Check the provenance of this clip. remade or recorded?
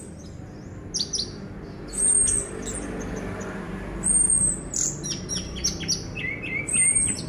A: recorded